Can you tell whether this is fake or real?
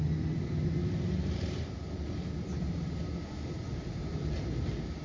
real